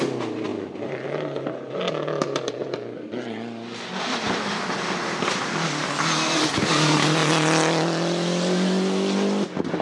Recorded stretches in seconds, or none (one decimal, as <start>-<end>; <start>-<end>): 0.0-9.8